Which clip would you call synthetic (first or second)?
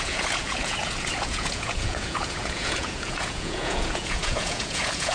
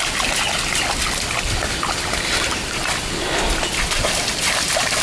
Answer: first